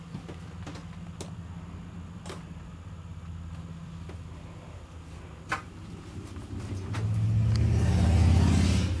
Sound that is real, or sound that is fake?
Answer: real